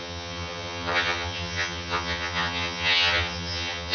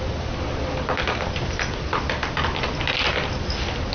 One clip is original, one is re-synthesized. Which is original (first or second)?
second